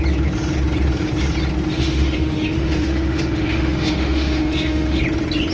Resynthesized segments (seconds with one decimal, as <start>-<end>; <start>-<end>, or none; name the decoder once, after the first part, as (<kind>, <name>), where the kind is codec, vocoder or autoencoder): 1.7-5.0 (autoencoder, DAC-VAE)